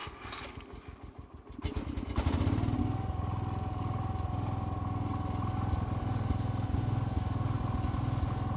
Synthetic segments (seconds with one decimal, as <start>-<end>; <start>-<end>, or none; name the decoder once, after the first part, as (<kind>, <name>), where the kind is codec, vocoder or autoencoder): none